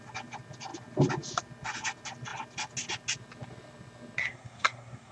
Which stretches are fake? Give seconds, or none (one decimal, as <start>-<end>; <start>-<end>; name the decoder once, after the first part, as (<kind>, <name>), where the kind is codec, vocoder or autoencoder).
4.2-5.1 (codec, SNAC)